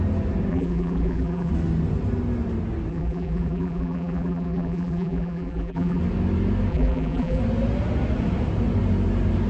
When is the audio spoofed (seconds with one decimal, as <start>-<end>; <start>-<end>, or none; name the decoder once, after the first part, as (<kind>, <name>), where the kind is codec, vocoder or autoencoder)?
0.5-1.5 (vocoder, BigVGAN v2); 2.9-6.0; 6.7-7.4